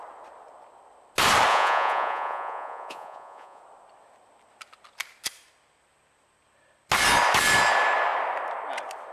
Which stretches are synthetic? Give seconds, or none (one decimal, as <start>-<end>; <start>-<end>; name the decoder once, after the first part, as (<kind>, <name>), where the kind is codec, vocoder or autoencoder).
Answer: 1.5-3.6 (vocoder, Vocos)